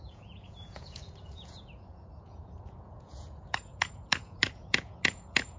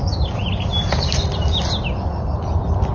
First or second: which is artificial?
first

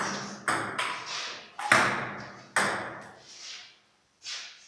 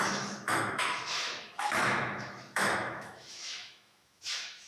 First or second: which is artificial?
second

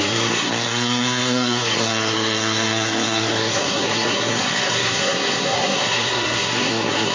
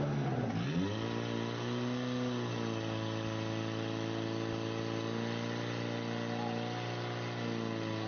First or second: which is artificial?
first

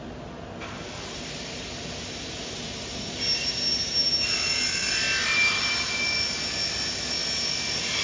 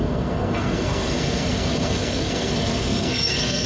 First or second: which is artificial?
second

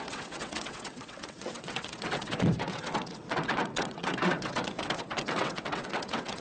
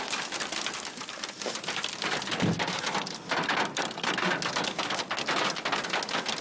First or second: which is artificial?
first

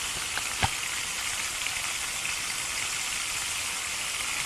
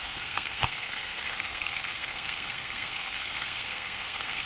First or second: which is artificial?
second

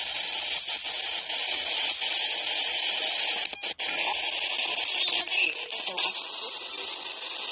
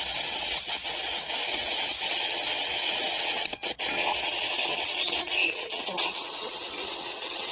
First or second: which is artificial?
second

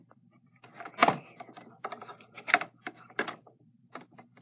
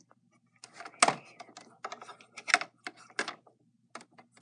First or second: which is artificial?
first